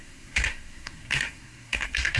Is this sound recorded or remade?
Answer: remade